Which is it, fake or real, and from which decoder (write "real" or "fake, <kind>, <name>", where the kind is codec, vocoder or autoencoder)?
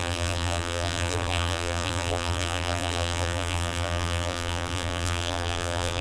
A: fake, vocoder, BigVGAN v2